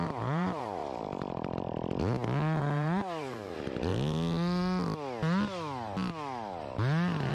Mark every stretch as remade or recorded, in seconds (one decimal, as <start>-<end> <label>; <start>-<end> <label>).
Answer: 0.0-0.8 remade; 0.8-2.6 recorded; 2.6-3.9 remade; 3.9-7.3 recorded